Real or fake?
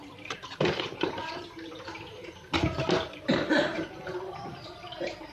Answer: fake